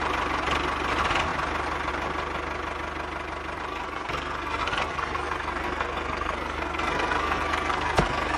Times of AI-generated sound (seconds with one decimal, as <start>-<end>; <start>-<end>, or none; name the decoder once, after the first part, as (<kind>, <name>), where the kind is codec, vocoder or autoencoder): 3.7-8.4 (codec, SNAC)